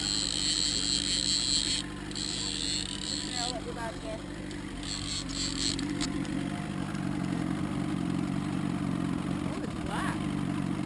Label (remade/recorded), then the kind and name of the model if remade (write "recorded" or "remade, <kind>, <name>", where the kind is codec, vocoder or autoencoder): recorded